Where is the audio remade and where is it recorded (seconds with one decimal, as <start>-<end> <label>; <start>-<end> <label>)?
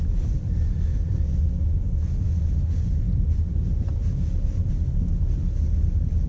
0.0-6.3 recorded